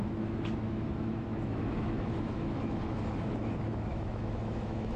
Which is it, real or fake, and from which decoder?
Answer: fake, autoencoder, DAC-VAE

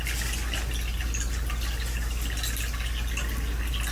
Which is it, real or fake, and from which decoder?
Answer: real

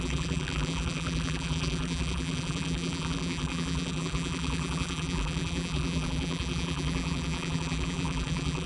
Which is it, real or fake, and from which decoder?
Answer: fake, vocoder, BigVGAN v2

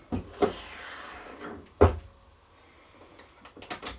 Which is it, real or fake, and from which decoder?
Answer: real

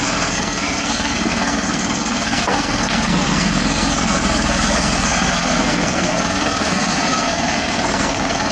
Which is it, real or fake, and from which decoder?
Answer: fake, codec, SNAC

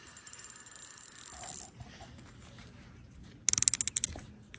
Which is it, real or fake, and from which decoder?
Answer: real